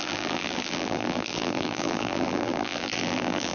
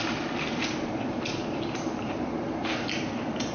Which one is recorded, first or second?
second